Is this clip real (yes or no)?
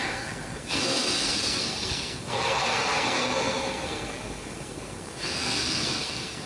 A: no